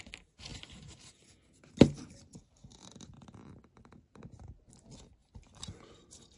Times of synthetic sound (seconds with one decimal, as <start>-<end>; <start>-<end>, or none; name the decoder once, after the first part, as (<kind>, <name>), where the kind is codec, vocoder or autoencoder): 0.5-1.7 (vocoder, BigVGAN v2); 2.7-4.7